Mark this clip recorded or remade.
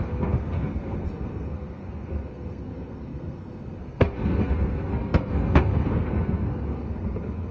remade